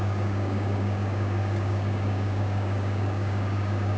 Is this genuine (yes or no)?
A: no